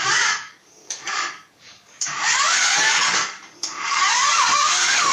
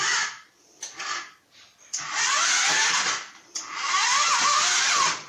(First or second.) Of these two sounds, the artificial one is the first